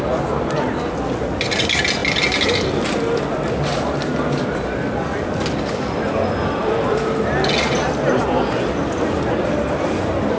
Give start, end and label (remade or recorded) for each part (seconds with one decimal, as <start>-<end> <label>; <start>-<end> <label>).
0.0-10.4 recorded

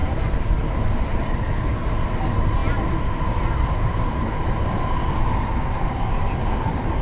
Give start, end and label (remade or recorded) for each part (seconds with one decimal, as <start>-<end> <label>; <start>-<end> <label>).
0.0-1.7 remade; 1.7-7.0 recorded